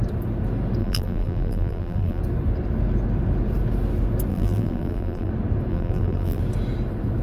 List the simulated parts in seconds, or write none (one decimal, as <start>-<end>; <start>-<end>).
0.8-2.2; 4.3-5.3; 5.7-6.4